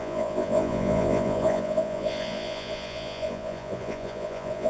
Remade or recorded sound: remade